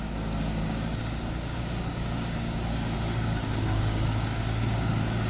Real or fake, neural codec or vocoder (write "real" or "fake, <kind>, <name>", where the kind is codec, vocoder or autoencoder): fake, codec, DAC